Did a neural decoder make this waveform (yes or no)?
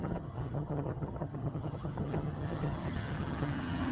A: yes